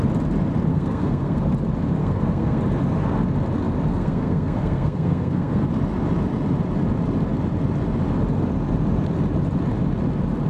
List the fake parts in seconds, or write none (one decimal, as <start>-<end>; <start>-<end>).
0.7-1.4; 2.0-2.6; 3.9-5.7